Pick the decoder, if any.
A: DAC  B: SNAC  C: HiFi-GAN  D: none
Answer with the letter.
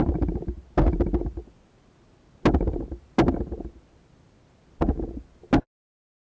D